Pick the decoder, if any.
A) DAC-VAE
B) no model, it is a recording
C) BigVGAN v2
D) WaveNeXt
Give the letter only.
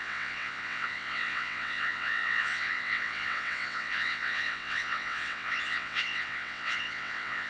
D